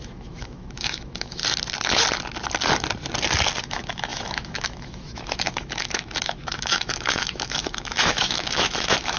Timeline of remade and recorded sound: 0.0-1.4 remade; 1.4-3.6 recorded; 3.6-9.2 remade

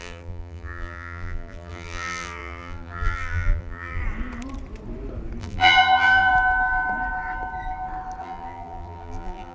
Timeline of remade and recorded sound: 0.0-4.0 remade; 4.0-5.4 recorded; 5.4-6.3 remade; 6.3-8.2 recorded; 8.2-9.5 remade

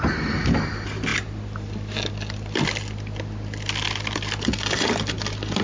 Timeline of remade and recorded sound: 0.0-5.6 recorded

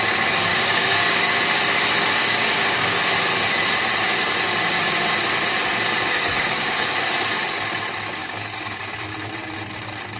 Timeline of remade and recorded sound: 0.0-0.5 recorded; 0.5-1.3 remade; 1.3-2.2 recorded; 2.2-3.0 remade; 3.0-6.1 recorded; 6.1-6.9 remade; 6.9-8.2 recorded; 8.2-8.8 remade; 8.8-10.2 recorded

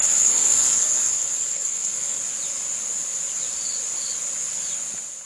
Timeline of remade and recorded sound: 0.0-2.2 remade; 2.2-5.2 recorded